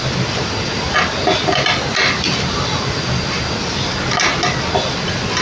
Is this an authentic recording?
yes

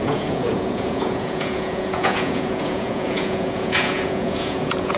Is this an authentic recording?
no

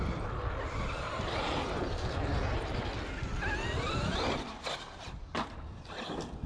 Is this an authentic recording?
yes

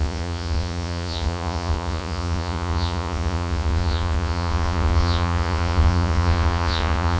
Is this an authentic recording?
no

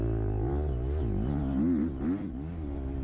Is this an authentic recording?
yes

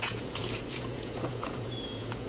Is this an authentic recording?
no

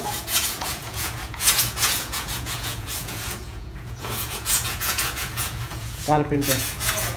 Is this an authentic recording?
no